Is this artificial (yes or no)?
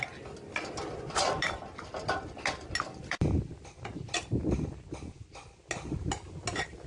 no